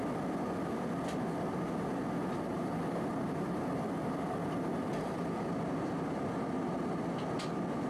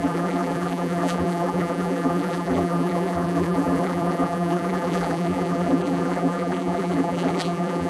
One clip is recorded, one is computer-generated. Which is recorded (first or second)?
first